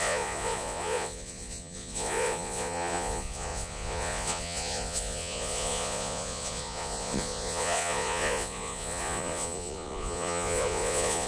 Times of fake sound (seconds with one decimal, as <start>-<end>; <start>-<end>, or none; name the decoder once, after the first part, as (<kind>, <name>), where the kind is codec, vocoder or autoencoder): 0.0-11.3 (vocoder, Vocos)